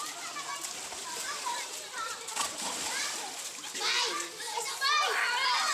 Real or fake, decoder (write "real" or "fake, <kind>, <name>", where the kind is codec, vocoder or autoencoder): real